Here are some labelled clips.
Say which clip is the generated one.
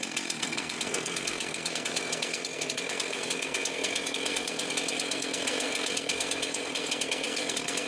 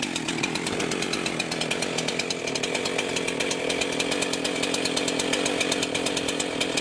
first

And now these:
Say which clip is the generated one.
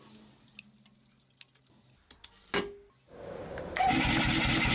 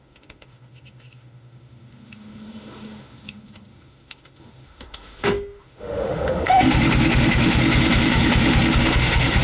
second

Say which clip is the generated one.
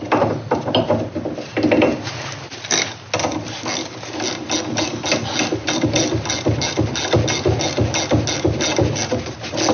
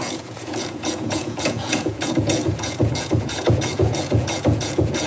second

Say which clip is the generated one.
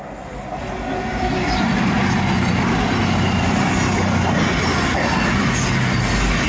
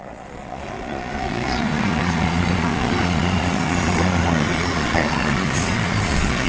second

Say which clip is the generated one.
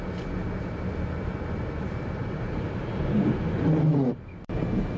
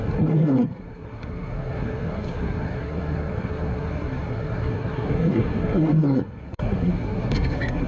second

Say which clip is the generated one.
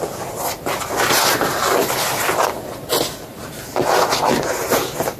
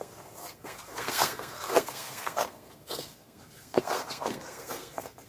second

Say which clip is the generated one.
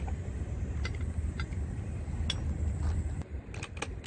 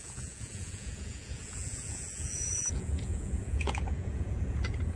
second